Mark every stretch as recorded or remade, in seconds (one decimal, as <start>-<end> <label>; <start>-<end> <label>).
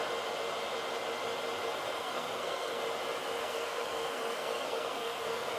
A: 0.0-1.9 recorded; 1.9-2.8 remade; 2.8-3.4 recorded; 3.4-5.6 remade